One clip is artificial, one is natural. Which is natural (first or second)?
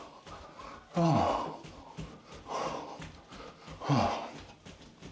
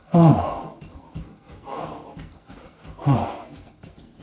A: first